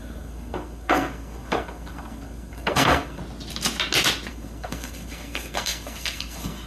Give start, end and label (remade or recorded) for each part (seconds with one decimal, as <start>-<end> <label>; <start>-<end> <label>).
0.0-3.2 remade; 3.2-4.3 recorded; 4.3-6.7 remade